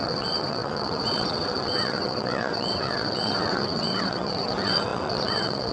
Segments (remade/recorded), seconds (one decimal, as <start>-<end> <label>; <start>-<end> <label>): 0.0-5.7 remade